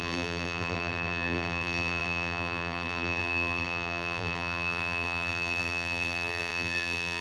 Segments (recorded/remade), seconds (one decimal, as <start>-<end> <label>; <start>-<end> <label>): 0.0-7.2 remade